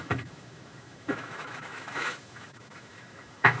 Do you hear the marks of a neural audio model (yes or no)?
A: yes